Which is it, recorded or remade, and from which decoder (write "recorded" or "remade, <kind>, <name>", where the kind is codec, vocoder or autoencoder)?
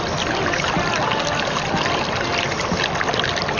recorded